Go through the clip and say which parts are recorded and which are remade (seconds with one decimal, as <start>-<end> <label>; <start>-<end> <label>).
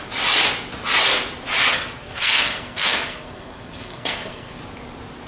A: 0.0-1.7 recorded; 1.7-4.6 remade; 4.6-5.3 recorded